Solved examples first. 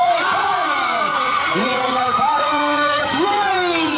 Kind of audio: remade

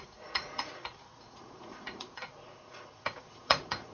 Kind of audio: remade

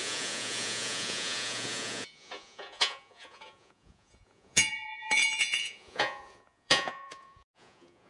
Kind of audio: remade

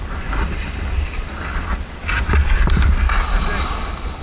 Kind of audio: recorded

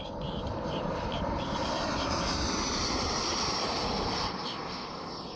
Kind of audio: recorded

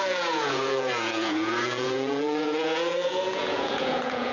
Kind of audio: remade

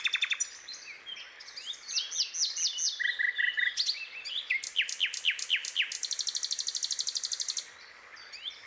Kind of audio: recorded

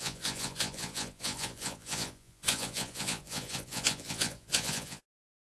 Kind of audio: remade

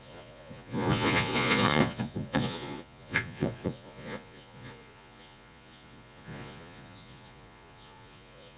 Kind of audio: remade